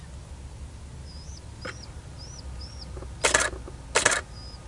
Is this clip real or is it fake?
real